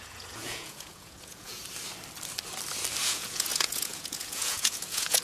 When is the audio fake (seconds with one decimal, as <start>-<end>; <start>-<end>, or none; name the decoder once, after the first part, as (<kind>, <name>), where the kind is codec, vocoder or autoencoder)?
0.0-1.6 (vocoder, Vocos); 3.0-5.2